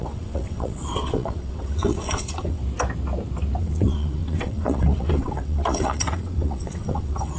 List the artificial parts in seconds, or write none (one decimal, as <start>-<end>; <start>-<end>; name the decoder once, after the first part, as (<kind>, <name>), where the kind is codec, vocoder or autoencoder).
0.0-2.6 (vocoder, WaveNeXt); 3.6-7.4